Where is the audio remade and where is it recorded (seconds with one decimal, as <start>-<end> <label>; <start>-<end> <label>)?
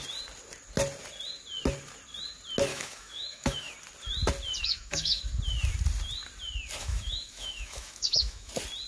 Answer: 0.0-2.7 recorded; 2.7-3.7 remade; 3.7-4.6 recorded; 4.6-5.2 remade; 5.2-6.8 recorded; 6.8-8.5 remade; 8.5-8.9 recorded